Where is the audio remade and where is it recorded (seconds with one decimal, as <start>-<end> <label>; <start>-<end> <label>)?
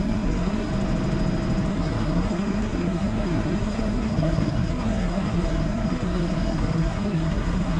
0.0-0.7 remade; 0.7-1.7 recorded; 1.7-7.8 remade